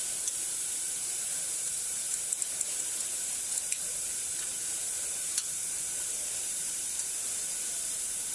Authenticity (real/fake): fake